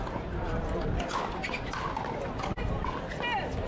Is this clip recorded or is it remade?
recorded